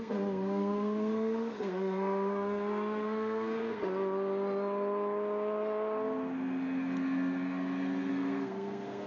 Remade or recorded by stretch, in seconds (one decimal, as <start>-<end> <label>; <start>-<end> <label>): 0.0-3.8 remade; 3.8-8.1 recorded; 8.1-9.1 remade